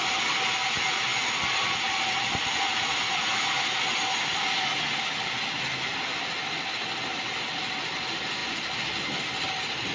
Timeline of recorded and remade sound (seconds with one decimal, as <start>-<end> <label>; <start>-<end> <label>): 0.0-9.9 recorded